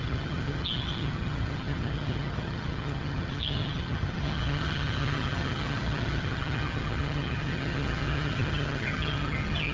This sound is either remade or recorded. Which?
remade